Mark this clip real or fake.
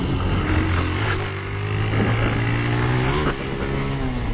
real